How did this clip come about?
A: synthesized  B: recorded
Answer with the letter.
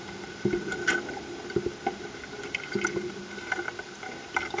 B